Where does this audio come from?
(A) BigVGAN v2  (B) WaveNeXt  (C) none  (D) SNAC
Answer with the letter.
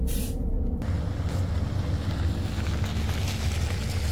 C